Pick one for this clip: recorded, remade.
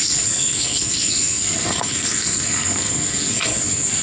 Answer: remade